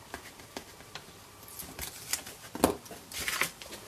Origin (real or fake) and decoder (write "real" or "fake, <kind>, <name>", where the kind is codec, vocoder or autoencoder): real